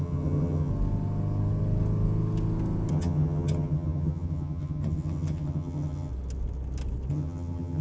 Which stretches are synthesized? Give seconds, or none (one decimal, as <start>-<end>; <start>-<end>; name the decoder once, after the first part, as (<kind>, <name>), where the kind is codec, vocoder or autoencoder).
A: 0.0-0.7 (vocoder, HiFi-GAN); 2.9-6.1; 7.1-7.8